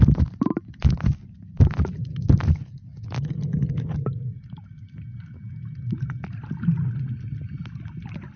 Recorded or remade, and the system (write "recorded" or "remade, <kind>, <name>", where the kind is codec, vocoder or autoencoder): recorded